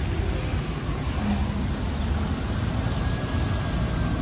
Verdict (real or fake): real